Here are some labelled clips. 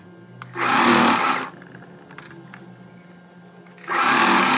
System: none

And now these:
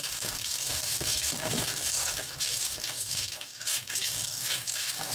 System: codec, DAC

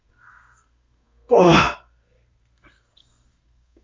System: codec, SNAC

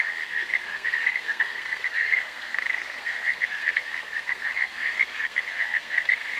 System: codec, SNAC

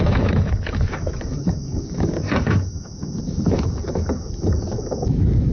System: autoencoder, DAC-VAE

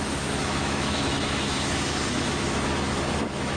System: autoencoder, DAC-VAE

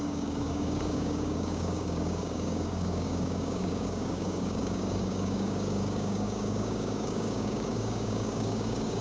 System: codec, DAC